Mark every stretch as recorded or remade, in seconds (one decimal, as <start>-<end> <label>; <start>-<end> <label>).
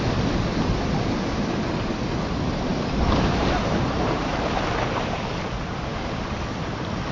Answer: 0.0-2.7 recorded; 2.7-4.6 remade; 4.6-7.1 recorded